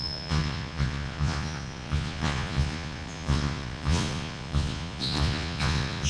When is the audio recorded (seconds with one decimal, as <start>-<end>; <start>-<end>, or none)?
none